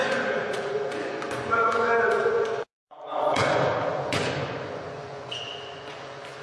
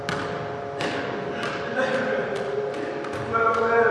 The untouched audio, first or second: second